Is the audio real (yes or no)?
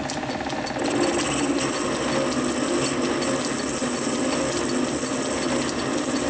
yes